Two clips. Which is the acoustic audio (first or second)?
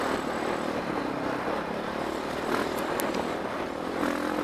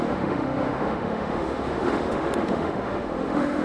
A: first